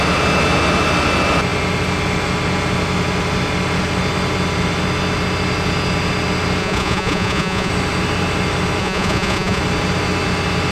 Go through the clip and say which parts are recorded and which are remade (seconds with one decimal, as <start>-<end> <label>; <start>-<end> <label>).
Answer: 0.0-6.6 recorded; 6.6-7.7 remade; 7.7-8.8 recorded; 8.8-9.6 remade; 9.6-10.7 recorded